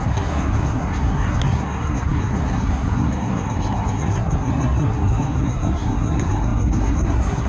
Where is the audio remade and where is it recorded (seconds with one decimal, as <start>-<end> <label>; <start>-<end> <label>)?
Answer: 0.0-7.5 remade